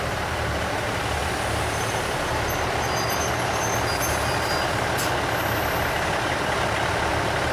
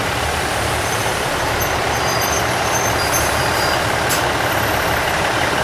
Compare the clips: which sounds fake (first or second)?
second